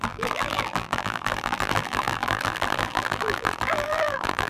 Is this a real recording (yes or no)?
no